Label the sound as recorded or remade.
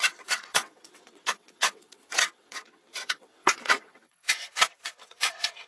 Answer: remade